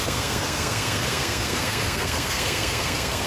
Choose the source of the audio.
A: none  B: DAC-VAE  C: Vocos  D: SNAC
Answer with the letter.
D